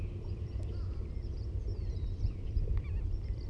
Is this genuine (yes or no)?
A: no